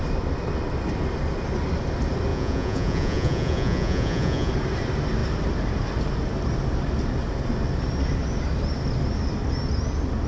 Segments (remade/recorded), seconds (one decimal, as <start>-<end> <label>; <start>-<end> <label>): 0.0-2.3 recorded; 2.3-4.5 remade; 4.5-10.3 recorded